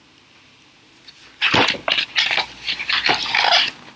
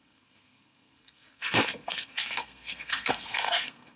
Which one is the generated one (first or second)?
second